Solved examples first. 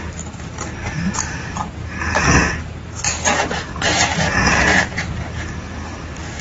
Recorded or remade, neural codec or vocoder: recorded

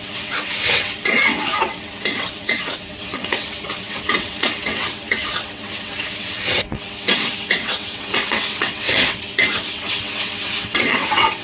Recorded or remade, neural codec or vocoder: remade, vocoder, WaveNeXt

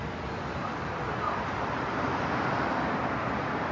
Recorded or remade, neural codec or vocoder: recorded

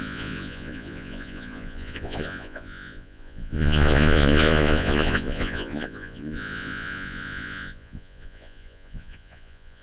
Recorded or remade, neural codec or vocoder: remade, vocoder, Vocos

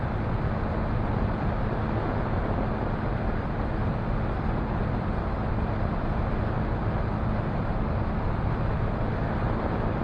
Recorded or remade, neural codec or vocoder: recorded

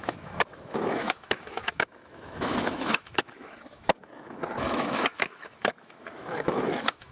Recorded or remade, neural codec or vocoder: remade, autoencoder, DAC-VAE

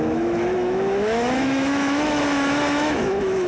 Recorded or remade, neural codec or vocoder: remade, autoencoder, DAC-VAE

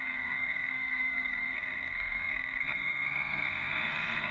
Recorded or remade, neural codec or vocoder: remade, codec, SNAC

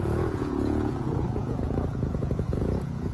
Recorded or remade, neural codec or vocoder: remade, vocoder, Vocos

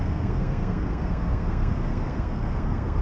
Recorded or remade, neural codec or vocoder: remade, codec, SNAC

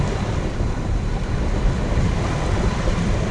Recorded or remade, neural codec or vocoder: recorded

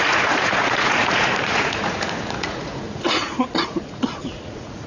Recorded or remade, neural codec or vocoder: remade, vocoder, Vocos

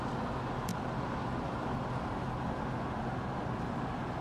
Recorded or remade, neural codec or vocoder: recorded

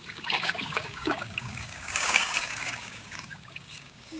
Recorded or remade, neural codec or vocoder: remade, codec, DAC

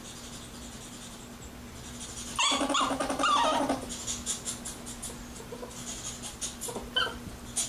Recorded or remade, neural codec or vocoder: recorded